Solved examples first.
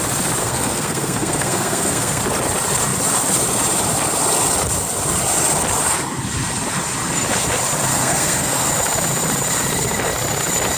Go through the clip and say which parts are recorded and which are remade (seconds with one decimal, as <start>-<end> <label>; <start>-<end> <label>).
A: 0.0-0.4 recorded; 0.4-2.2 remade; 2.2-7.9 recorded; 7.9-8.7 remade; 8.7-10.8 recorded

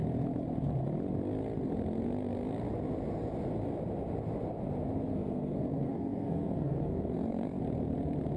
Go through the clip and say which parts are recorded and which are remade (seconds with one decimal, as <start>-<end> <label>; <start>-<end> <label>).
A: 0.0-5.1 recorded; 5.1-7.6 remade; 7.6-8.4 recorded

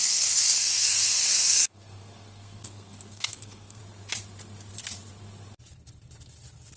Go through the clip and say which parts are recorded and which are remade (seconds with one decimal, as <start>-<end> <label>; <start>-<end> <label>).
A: 0.0-3.8 remade; 3.8-6.8 recorded